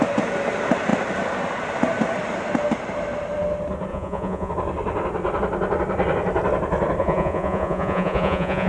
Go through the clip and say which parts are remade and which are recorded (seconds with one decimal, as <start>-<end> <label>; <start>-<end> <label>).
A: 0.0-3.9 recorded; 3.9-4.5 remade; 4.5-7.0 recorded; 7.0-8.7 remade